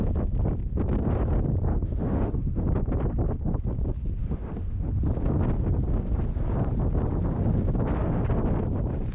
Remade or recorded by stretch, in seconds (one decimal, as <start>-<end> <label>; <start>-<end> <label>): 0.0-1.7 recorded; 1.7-2.6 remade; 2.6-4.2 recorded; 4.2-4.9 remade; 4.9-9.1 recorded